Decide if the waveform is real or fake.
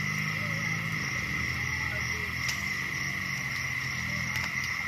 real